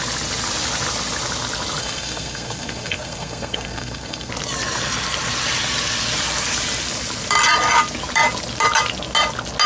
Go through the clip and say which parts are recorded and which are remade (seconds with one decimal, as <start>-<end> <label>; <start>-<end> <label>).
0.0-1.8 recorded; 1.8-4.3 remade; 4.3-9.7 recorded